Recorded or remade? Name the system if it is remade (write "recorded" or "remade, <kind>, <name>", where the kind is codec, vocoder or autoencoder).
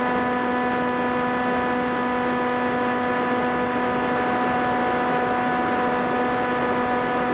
recorded